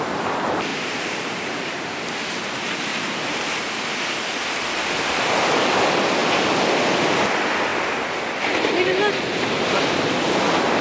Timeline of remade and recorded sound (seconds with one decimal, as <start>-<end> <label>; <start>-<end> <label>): 0.0-0.7 recorded; 0.7-3.7 remade; 3.7-10.8 recorded